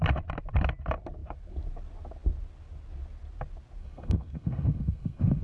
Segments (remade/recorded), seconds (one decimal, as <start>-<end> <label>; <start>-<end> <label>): 0.0-3.8 recorded; 3.8-5.4 remade